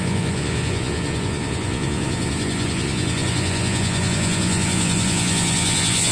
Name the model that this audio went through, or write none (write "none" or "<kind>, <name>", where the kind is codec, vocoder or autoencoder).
vocoder, Vocos